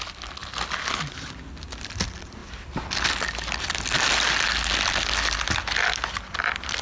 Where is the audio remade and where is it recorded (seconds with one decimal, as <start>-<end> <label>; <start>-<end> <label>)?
0.0-6.8 recorded